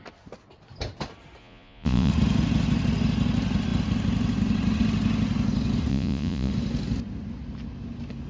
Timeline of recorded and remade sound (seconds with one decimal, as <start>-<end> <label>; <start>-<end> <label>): 0.0-1.4 recorded; 1.4-2.1 remade; 2.1-5.9 recorded; 5.9-6.5 remade; 6.5-8.3 recorded